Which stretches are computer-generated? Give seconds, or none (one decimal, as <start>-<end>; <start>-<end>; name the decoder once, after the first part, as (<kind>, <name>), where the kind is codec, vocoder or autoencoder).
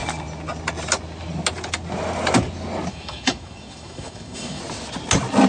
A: 2.9-4.6 (autoencoder, DAC-VAE)